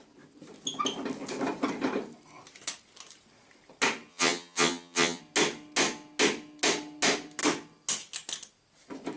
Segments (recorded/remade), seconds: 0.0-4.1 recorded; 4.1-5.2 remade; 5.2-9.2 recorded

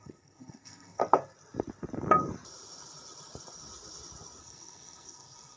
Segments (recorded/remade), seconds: 0.0-1.0 remade; 1.0-4.4 recorded; 4.4-5.6 remade